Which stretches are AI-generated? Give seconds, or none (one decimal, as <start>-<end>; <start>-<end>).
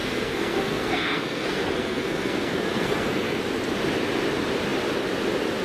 0.0-3.4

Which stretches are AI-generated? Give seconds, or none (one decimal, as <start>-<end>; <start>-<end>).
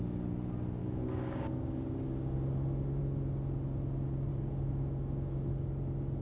0.8-3.0; 4.3-5.5